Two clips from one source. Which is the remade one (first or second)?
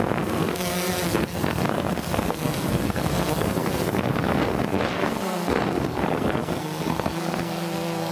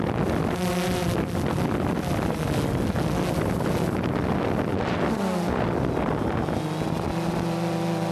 first